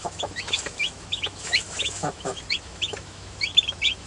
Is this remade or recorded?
remade